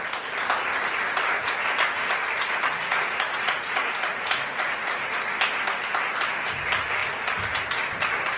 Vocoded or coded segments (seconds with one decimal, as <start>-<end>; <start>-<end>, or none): 2.7-5.2